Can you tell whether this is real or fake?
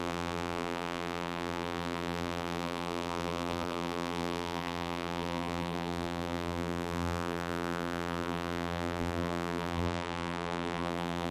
fake